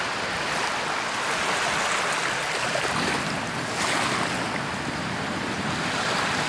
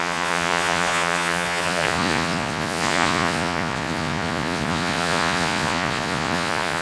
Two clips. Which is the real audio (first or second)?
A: first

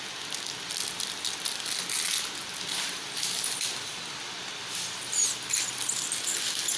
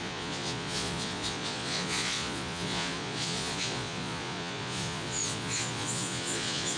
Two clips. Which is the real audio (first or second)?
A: first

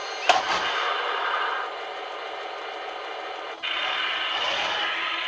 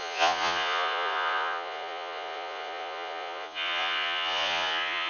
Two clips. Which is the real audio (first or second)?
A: first